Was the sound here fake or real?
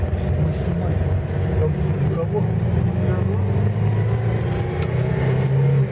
real